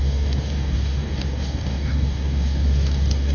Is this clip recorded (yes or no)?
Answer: no